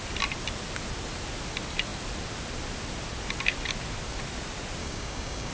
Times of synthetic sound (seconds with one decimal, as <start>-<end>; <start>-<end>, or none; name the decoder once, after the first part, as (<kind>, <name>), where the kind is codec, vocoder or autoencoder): 4.8-5.5 (codec, DAC)